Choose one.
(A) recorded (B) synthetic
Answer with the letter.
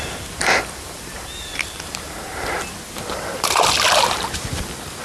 A